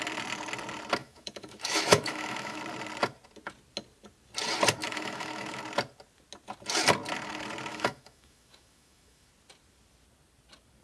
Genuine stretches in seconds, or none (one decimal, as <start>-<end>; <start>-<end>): 0.0-1.0; 2.6-4.8; 5.6-7.7; 9.3-10.8